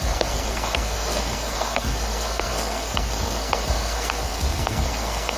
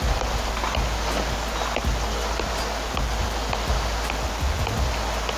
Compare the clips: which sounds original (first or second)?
second